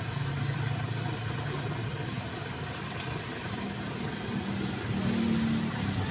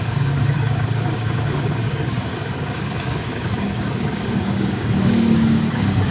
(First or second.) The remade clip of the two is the second